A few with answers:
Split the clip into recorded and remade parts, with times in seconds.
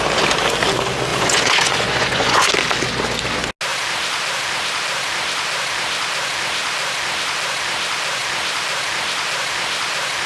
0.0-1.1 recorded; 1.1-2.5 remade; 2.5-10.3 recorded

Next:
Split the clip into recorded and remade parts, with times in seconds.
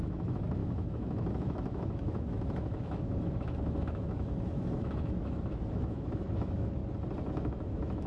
0.0-6.8 remade; 6.8-7.3 recorded; 7.3-8.1 remade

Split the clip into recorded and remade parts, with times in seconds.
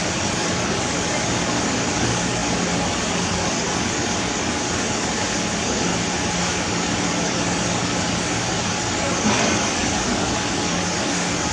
0.0-5.9 remade; 5.9-6.4 recorded; 6.4-11.5 remade